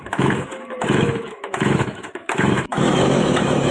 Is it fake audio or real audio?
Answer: fake